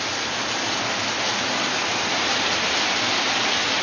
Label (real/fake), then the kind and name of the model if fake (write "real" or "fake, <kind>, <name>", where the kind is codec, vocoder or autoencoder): real